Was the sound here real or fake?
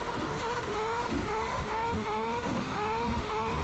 fake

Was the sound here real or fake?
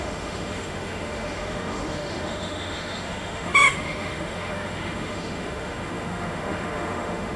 fake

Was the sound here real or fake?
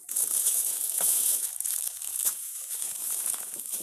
fake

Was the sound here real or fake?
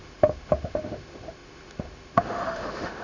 fake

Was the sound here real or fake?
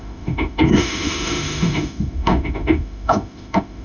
fake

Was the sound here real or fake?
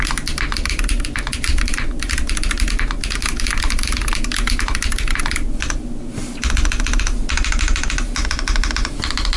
real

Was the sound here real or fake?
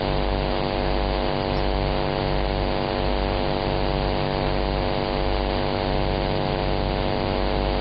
real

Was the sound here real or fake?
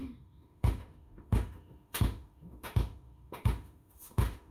fake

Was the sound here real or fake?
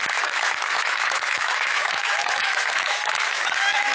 fake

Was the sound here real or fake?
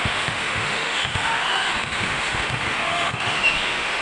fake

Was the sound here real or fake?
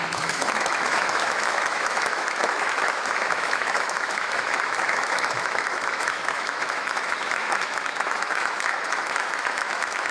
fake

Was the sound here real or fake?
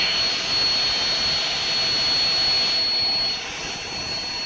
real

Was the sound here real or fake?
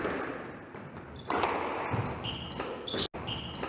real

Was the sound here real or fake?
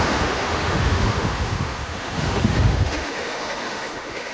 fake